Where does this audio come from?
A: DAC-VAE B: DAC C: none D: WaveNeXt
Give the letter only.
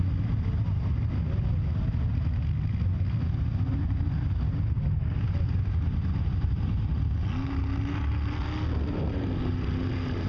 C